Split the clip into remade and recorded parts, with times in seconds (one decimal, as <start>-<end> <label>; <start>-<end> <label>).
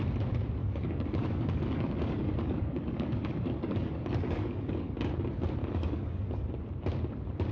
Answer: 0.0-0.6 recorded; 0.6-5.1 remade; 5.1-5.6 recorded; 5.6-6.5 remade; 6.5-7.5 recorded